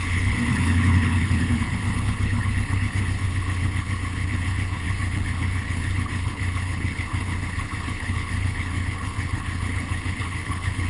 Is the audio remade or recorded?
remade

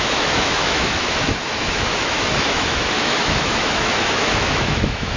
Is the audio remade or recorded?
remade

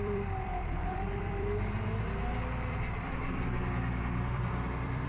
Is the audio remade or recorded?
remade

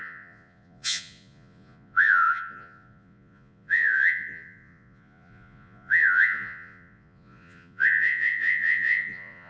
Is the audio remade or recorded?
remade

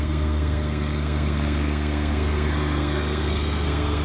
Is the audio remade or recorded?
remade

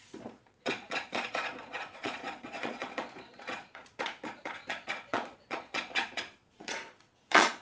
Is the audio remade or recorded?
remade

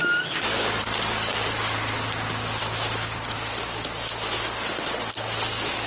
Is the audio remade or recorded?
recorded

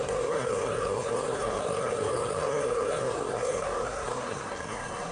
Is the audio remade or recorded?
remade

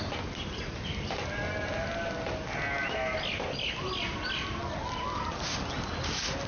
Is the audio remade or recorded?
recorded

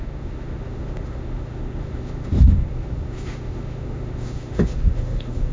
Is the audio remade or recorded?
remade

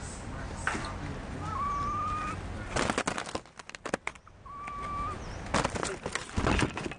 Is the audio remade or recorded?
recorded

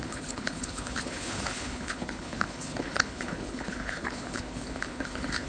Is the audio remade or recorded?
remade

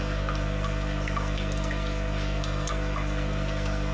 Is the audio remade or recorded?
remade